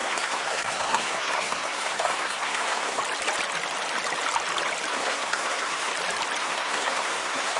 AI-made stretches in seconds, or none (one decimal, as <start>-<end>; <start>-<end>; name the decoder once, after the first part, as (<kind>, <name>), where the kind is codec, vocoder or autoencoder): 0.0-3.0 (codec, SNAC); 4.9-5.9; 6.4-7.6